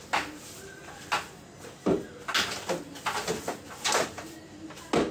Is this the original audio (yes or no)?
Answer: yes